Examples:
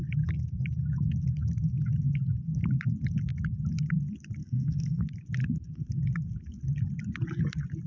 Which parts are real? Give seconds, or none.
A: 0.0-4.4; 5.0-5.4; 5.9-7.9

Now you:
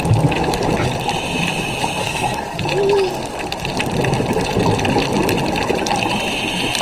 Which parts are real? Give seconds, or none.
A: 0.0-2.0; 2.6-6.8

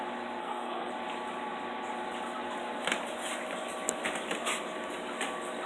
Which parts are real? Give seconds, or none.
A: 0.0-0.4; 0.9-5.7

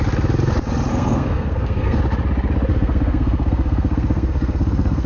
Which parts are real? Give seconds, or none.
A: 0.0-0.9; 2.0-2.7